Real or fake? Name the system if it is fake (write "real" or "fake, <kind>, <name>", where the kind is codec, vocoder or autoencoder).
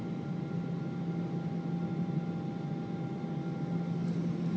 real